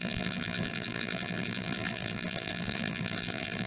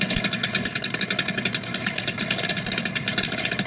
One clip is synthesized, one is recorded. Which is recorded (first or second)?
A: second